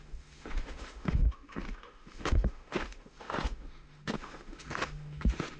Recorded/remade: remade